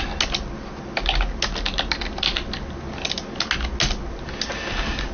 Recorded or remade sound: recorded